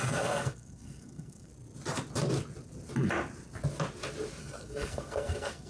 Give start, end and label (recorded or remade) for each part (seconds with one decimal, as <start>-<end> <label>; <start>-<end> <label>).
0.0-1.5 remade; 1.5-4.4 recorded; 4.4-5.7 remade